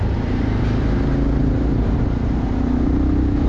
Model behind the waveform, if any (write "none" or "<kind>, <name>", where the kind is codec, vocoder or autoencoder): none